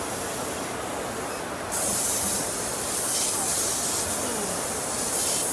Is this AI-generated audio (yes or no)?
no